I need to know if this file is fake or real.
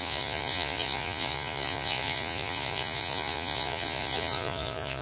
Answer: fake